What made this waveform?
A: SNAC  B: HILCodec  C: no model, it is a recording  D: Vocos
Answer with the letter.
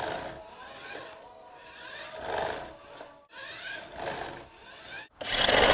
C